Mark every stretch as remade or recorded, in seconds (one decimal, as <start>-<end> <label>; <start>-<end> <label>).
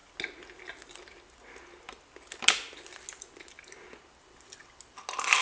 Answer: 0.0-5.4 recorded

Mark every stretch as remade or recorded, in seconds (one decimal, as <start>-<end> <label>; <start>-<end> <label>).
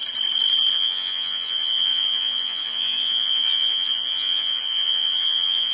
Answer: 0.0-0.7 recorded; 0.7-5.7 remade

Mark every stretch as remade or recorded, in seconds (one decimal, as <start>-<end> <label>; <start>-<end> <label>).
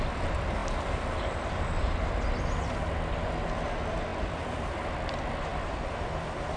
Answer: 0.0-6.6 recorded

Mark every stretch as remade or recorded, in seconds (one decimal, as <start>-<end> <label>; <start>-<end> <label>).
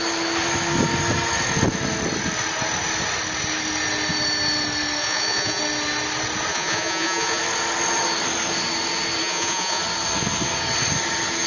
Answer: 0.0-5.0 recorded; 5.0-5.6 remade; 5.6-6.5 recorded; 6.5-7.4 remade; 7.4-9.2 recorded; 9.2-9.8 remade; 9.8-11.5 recorded